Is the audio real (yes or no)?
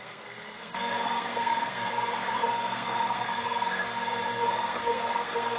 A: no